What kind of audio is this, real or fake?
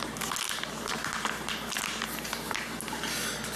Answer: real